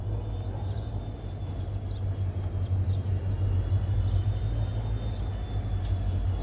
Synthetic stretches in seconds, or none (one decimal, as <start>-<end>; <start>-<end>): none